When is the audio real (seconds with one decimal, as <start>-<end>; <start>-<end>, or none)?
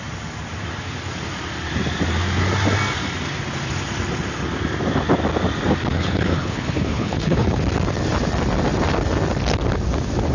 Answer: 0.0-5.9; 7.6-10.3